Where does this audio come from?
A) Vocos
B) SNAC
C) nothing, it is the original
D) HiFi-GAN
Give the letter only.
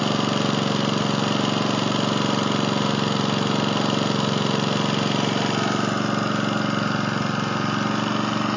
C